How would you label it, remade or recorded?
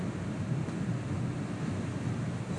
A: recorded